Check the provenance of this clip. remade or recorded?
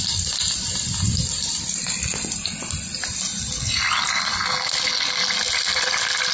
recorded